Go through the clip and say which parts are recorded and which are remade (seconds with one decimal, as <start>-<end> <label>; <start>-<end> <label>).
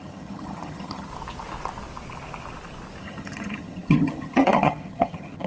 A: 0.0-1.1 remade; 1.1-3.0 recorded; 3.0-5.5 remade